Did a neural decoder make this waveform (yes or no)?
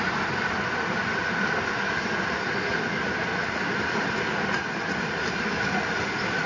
no